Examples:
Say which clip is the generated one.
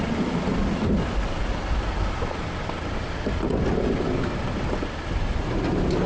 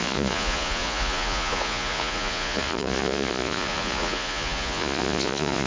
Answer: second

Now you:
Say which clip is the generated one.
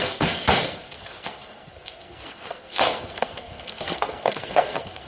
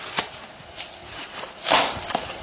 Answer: first